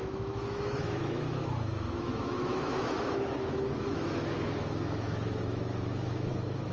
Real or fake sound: fake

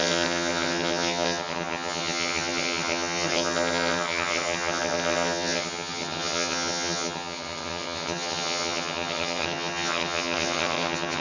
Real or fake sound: fake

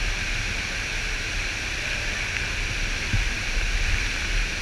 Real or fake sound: real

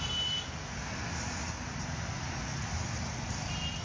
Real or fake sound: real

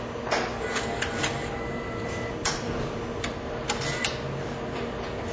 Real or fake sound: real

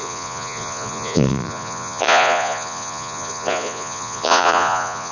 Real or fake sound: fake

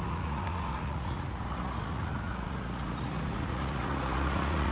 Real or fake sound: fake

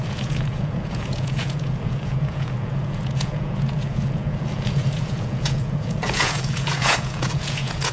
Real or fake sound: fake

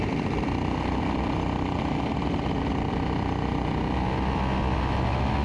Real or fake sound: real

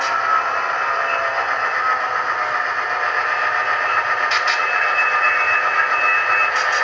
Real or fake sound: real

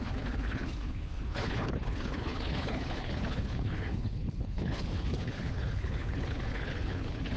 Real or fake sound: fake